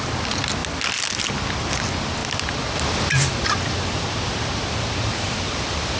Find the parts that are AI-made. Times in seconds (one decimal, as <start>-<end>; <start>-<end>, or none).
2.2-6.0